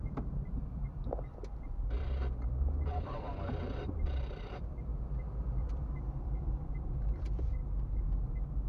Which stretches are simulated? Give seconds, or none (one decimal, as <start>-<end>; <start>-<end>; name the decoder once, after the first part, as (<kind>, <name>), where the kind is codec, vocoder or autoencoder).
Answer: 0.0-7.6 (vocoder, BigVGAN v2)